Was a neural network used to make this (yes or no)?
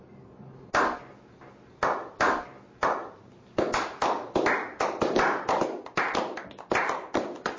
no